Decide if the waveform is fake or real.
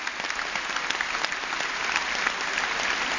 real